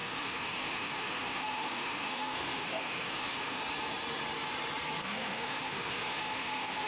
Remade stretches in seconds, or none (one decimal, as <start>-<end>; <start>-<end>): 0.0-3.6; 5.0-6.9